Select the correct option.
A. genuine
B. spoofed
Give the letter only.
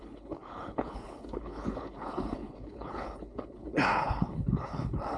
B